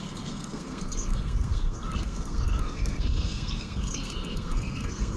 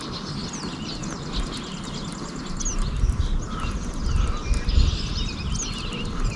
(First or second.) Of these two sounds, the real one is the second